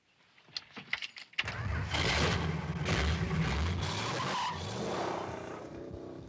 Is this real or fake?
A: real